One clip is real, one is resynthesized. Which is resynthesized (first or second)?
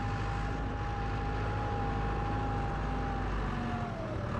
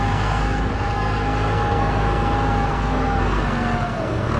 second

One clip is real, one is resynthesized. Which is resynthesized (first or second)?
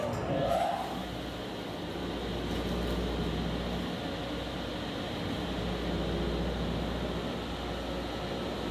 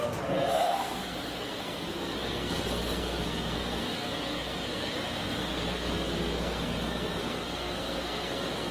second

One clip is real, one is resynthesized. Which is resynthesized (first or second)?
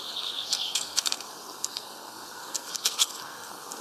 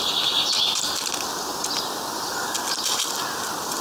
first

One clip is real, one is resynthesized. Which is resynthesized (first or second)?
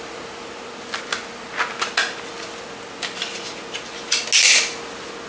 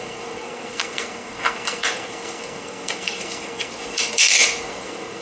second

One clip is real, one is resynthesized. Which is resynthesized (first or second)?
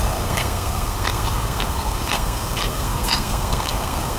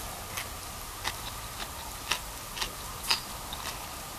first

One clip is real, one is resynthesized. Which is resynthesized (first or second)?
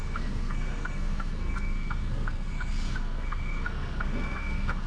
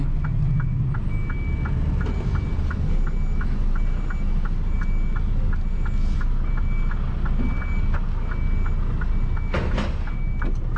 first